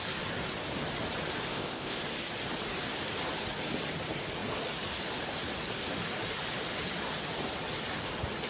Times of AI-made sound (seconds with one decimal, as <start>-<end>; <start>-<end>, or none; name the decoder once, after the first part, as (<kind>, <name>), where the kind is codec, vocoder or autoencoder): 1.5-2.0 (codec, ZipCodec)